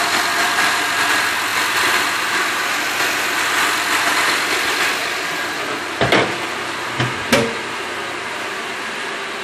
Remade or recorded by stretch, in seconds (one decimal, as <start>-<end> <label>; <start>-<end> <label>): 0.0-9.4 recorded